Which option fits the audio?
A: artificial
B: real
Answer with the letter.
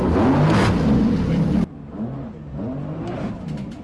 B